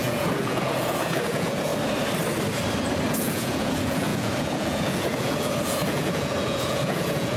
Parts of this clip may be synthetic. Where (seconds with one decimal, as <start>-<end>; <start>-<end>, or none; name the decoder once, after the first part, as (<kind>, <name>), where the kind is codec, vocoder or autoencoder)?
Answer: 0.0-1.7 (vocoder, Vocos); 3.1-7.4